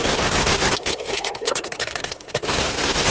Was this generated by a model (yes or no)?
yes